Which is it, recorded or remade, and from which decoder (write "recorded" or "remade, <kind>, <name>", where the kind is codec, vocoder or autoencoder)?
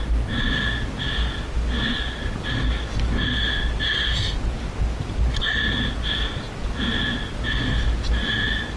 recorded